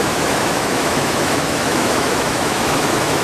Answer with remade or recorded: remade